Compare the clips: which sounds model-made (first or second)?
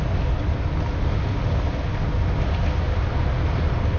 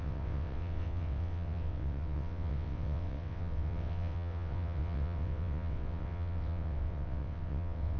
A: second